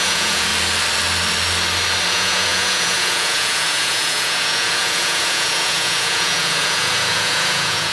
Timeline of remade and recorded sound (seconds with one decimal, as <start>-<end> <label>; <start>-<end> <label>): 0.0-0.5 remade; 0.5-2.1 recorded; 2.1-7.9 remade